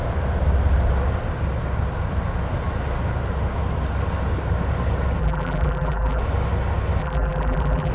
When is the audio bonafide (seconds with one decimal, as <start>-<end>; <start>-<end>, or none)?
0.0-5.2; 6.2-7.0